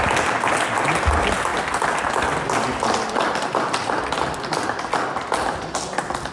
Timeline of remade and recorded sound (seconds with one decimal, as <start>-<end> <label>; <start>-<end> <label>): 0.0-6.3 recorded